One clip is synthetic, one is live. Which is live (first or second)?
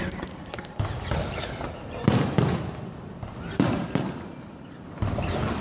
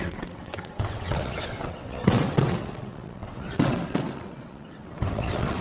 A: first